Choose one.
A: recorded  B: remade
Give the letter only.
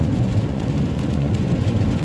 B